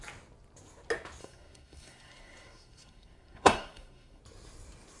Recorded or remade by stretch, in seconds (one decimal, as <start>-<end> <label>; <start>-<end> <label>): 0.0-1.2 recorded; 1.2-4.2 remade; 4.2-5.0 recorded